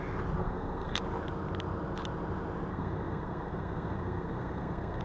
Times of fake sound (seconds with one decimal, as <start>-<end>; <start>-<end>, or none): 0.4-1.0; 2.7-5.0